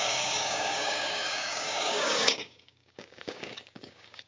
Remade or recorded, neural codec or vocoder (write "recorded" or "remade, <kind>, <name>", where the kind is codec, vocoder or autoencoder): remade, codec, DAC